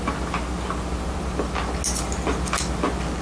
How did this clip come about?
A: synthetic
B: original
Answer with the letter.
B